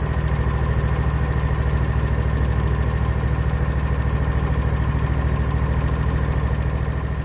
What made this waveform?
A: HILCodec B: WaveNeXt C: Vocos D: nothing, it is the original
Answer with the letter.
D